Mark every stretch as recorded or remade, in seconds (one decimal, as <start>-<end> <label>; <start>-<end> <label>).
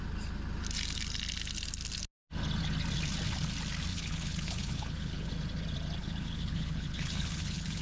0.0-3.9 recorded; 3.9-5.3 remade; 5.3-6.0 recorded; 6.0-7.8 remade